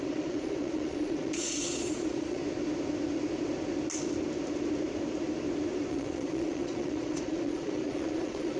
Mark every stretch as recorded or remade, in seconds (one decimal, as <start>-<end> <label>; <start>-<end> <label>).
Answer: 0.0-2.4 remade; 2.4-5.9 recorded; 5.9-8.6 remade